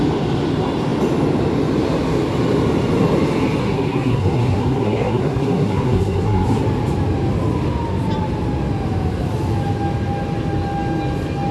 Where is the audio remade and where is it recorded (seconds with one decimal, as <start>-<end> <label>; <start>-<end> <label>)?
0.0-3.6 recorded; 3.6-6.6 remade; 6.6-11.5 recorded